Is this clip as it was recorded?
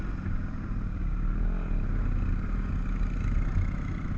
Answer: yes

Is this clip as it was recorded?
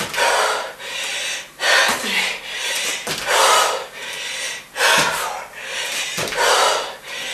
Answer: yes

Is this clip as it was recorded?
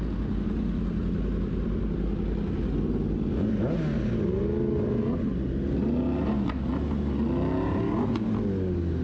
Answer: yes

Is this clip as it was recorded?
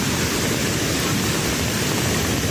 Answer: yes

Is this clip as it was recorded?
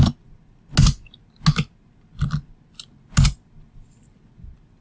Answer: yes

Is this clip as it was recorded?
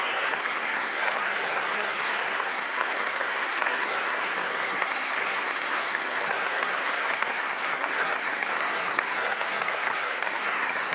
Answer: no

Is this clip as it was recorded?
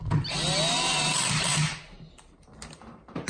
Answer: yes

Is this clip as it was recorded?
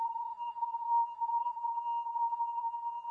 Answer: no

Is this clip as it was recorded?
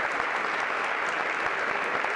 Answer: yes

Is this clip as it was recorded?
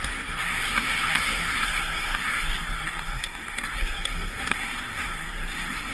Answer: no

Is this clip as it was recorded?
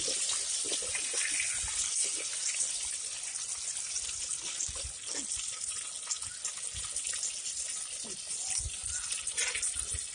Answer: yes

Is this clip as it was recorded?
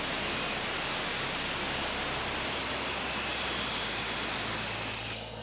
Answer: yes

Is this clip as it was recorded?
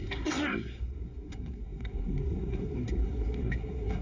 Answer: no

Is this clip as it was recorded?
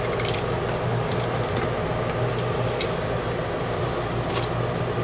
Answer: yes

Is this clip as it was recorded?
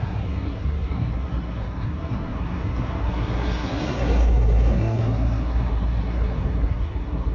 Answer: no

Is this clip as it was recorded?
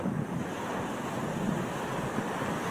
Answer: yes